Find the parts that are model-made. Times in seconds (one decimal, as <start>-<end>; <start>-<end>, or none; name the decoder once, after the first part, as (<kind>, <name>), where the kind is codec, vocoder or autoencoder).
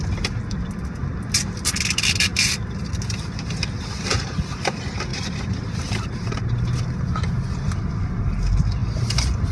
5.1-6.6 (vocoder, BigVGAN v2); 8.8-9.5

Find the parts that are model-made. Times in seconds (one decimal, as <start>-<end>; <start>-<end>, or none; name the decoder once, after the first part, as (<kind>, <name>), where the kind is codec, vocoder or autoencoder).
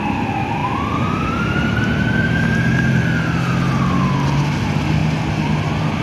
none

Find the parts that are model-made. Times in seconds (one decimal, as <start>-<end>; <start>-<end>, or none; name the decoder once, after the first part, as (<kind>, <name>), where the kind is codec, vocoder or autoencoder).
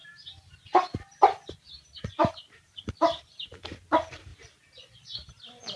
1.7-4.3 (vocoder, BigVGAN v2)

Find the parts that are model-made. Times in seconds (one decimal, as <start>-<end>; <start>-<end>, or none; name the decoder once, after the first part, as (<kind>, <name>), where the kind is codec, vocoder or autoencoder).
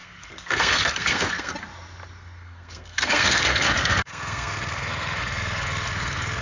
0.0-1.5 (codec, SNAC); 2.2-6.4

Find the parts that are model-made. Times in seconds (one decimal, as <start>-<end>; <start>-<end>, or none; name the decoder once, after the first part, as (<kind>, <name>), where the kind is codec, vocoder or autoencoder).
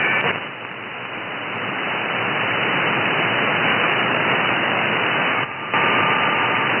3.7-5.6 (codec, DAC)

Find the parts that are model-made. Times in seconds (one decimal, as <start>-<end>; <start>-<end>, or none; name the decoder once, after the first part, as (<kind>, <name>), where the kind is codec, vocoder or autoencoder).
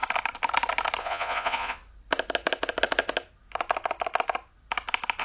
1.0-1.8 (vocoder, Vocos)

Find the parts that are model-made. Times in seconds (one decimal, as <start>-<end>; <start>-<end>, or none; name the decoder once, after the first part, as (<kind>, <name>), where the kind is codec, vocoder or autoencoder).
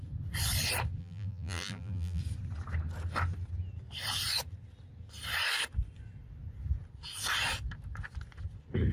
1.0-2.2 (vocoder, BigVGAN v2)